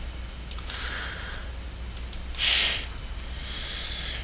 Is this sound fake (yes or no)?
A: no